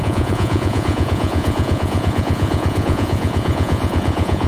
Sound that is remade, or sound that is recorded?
remade